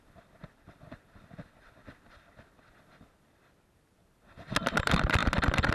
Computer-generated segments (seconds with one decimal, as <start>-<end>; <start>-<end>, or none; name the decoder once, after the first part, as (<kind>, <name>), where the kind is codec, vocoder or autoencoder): none